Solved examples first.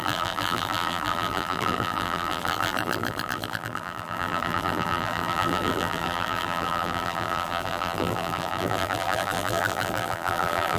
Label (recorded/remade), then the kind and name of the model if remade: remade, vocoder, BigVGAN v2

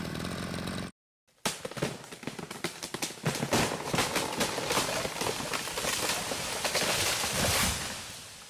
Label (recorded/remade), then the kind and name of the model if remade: recorded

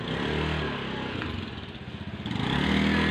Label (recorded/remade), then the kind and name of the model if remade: recorded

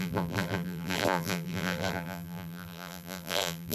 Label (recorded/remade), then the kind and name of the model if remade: remade, vocoder, BigVGAN v2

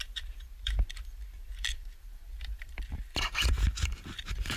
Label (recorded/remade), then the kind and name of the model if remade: remade, vocoder, BigVGAN v2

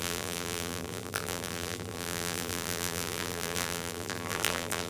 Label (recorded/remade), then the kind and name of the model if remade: remade, vocoder, BigVGAN v2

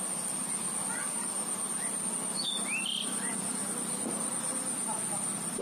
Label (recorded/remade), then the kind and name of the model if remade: recorded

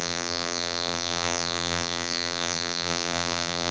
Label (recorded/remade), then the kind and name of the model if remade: remade, vocoder, BigVGAN v2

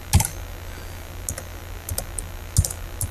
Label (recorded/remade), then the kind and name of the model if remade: recorded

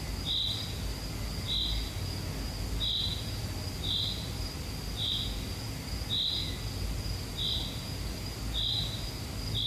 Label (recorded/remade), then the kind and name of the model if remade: recorded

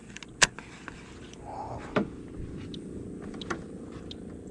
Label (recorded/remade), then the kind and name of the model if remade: recorded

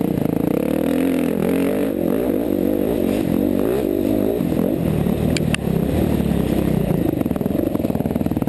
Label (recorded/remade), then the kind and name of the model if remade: remade, vocoder, BigVGAN v2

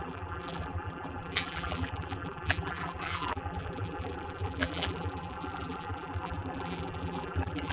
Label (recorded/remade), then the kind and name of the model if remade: remade, vocoder, BigVGAN v2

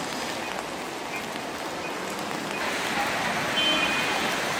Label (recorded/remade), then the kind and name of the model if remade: recorded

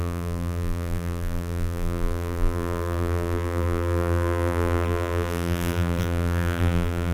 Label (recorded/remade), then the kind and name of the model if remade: remade, vocoder, BigVGAN v2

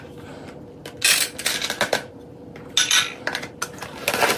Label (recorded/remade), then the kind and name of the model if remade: recorded